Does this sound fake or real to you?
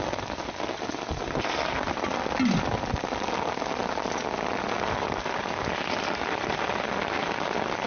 real